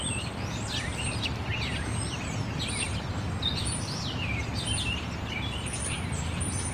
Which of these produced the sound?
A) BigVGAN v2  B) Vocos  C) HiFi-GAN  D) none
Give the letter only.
A